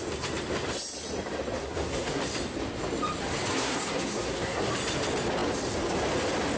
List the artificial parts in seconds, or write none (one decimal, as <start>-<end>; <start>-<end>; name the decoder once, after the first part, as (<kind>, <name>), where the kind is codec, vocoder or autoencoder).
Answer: 1.6-2.2 (codec, SNAC); 3.5-4.7